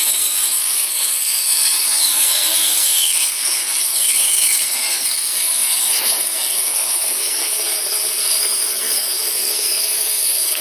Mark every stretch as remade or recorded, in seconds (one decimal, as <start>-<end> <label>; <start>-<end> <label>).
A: 0.0-10.6 remade